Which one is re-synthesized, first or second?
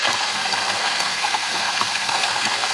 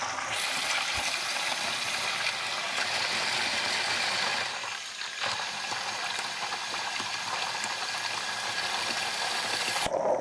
first